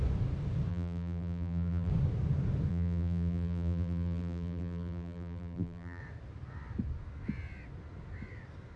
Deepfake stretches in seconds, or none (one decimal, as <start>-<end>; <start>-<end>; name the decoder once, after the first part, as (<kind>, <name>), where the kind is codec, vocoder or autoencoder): 0.7-1.9 (vocoder, BigVGAN v2); 2.7-6.0